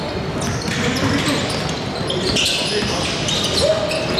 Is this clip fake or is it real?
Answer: real